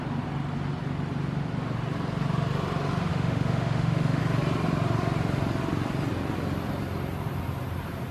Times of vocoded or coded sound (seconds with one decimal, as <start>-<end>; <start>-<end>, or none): 3.1-4.2